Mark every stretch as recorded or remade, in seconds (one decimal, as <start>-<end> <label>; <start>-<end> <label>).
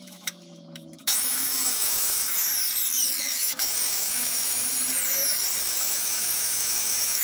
0.0-2.5 remade; 2.5-3.2 recorded; 3.2-4.6 remade; 4.6-5.6 recorded; 5.6-7.2 remade